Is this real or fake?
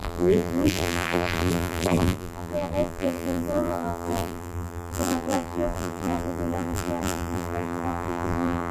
fake